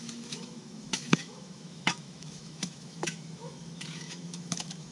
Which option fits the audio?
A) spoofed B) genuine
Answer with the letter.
A